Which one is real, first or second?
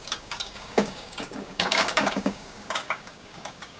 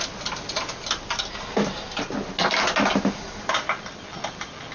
second